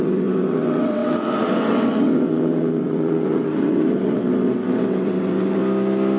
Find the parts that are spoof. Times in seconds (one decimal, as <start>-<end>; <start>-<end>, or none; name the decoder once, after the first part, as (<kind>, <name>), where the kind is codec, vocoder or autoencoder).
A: 0.0-5.6 (vocoder, WaveNeXt)